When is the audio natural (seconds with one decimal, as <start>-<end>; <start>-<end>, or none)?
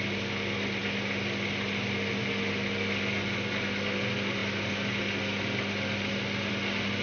0.0-7.0